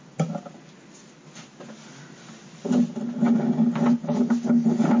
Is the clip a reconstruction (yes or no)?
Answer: no